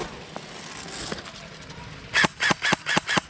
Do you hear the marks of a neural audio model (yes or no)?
no